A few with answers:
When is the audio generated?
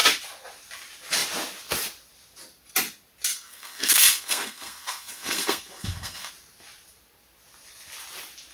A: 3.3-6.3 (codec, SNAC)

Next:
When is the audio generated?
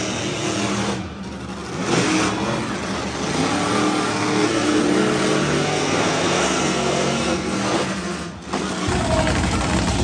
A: 4.1-4.8 (codec, SNAC); 5.7-8.9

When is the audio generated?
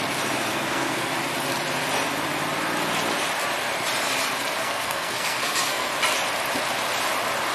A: 0.5-1.1 (codec, SNAC); 4.6-5.9